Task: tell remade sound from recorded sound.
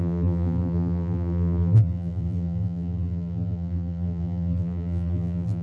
remade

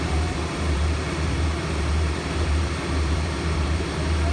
remade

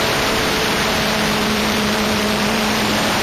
remade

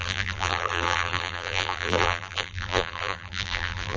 remade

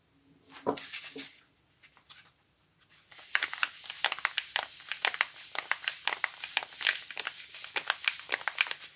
recorded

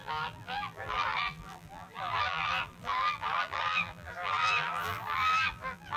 remade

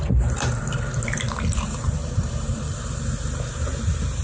remade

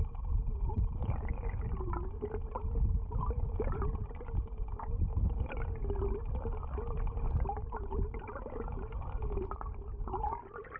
recorded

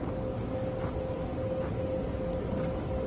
recorded